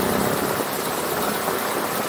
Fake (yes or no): no